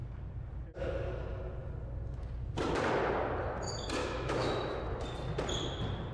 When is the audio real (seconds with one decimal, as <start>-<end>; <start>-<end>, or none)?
0.0-4.0; 4.8-6.1